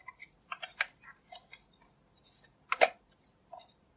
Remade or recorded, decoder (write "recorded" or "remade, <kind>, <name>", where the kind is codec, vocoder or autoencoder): recorded